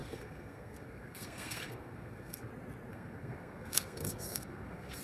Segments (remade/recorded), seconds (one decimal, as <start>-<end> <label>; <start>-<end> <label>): 0.0-2.5 remade; 2.5-2.9 recorded; 2.9-5.0 remade